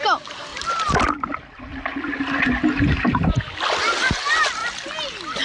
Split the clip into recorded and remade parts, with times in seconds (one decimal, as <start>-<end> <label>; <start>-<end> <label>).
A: 0.0-5.4 recorded